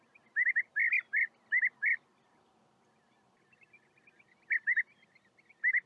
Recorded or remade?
recorded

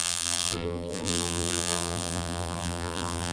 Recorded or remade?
remade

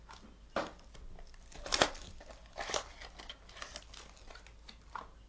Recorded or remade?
recorded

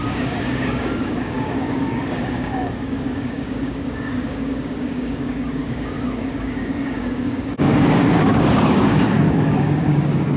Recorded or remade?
remade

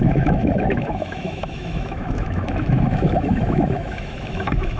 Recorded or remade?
remade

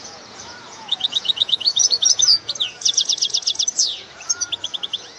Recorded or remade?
remade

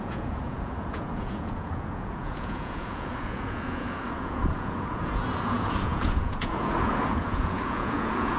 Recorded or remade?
remade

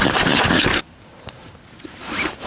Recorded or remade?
remade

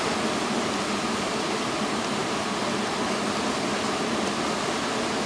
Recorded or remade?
recorded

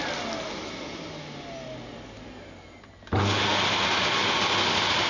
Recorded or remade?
recorded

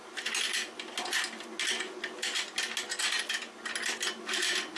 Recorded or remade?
recorded